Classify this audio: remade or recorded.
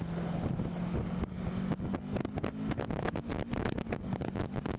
recorded